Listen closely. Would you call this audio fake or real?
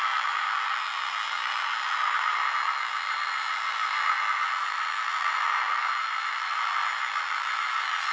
fake